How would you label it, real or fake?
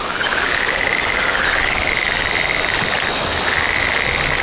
real